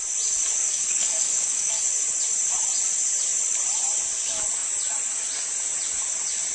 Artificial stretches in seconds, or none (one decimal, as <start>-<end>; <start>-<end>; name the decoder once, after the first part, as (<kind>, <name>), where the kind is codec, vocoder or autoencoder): 0.6-1.8 (codec, DAC)